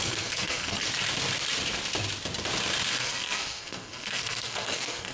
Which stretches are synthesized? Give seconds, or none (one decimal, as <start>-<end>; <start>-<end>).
0.0-0.8; 2.9-5.1

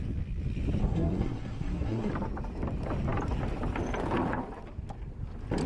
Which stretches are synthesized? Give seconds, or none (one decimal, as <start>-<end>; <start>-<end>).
0.8-2.1

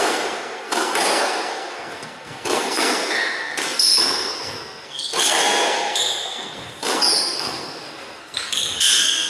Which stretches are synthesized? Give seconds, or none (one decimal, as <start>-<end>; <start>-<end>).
0.0-9.3